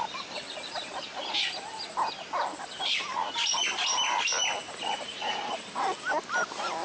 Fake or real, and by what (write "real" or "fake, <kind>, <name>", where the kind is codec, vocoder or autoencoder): real